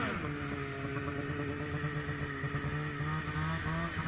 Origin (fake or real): real